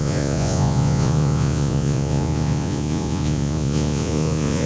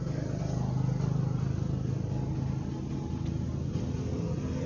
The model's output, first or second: first